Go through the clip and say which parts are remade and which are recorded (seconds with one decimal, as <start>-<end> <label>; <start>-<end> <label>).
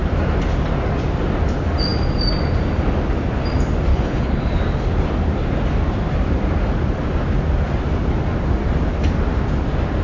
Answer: 0.0-3.9 recorded; 3.9-4.5 remade; 4.5-10.0 recorded